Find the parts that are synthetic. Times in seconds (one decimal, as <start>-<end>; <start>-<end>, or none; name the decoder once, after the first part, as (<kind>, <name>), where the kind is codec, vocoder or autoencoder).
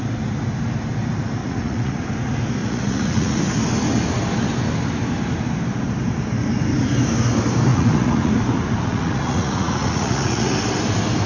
1.4-2.0 (vocoder, Vocos); 2.6-3.4; 7.7-8.3; 8.9-10.5